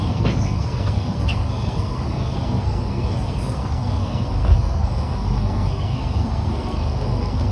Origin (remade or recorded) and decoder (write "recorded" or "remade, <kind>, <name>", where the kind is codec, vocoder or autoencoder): remade, codec, SNAC